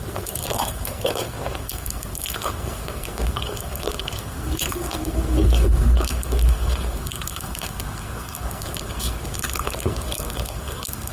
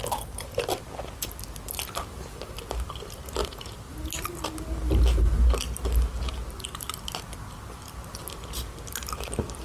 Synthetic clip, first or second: first